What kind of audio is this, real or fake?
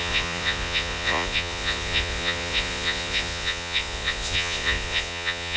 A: fake